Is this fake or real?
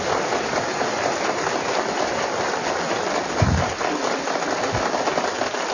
real